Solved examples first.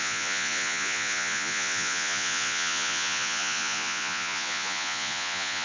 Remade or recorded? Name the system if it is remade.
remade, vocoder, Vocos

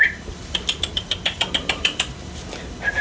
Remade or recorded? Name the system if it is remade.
recorded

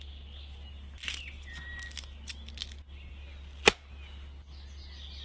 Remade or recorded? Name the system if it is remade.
recorded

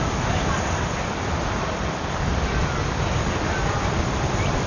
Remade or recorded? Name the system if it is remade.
recorded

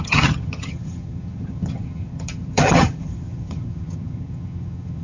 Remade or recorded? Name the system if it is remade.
remade, vocoder, HiFi-GAN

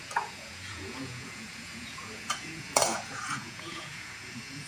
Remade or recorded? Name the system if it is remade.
remade, vocoder, Vocos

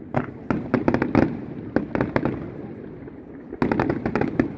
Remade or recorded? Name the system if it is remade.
recorded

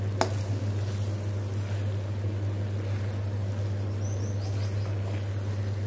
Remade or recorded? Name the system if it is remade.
recorded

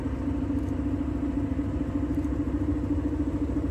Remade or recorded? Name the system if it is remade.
recorded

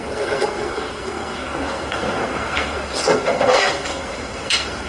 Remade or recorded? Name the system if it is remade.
remade, codec, SNAC